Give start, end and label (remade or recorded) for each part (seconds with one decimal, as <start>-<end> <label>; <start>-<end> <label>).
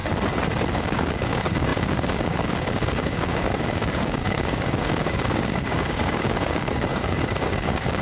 0.0-0.8 recorded; 0.8-8.0 remade